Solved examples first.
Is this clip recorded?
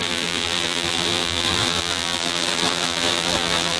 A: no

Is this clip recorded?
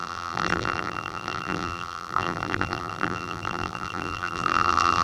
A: no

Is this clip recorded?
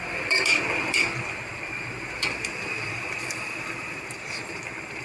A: no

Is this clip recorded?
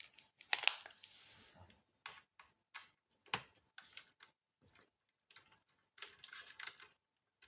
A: yes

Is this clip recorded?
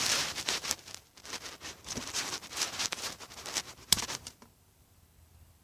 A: no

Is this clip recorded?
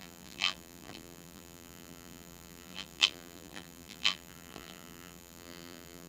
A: no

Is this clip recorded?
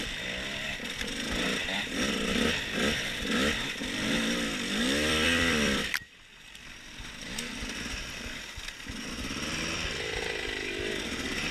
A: no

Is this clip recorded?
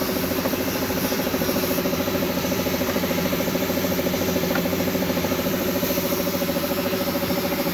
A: no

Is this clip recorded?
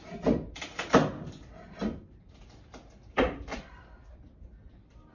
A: no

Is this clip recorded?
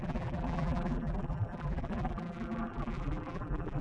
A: no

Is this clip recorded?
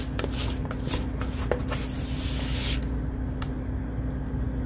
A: yes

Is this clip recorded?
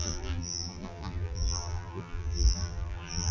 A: no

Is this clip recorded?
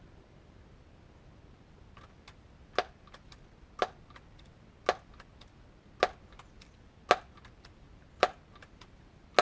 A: yes